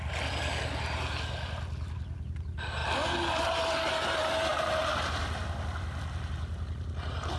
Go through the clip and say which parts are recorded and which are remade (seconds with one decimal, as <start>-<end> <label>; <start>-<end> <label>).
0.0-7.4 recorded